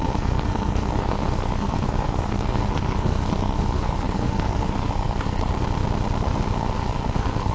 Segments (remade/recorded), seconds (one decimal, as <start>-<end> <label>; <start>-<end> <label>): 0.0-5.5 remade; 5.5-6.6 recorded; 6.6-7.5 remade